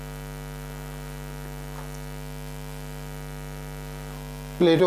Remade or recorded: recorded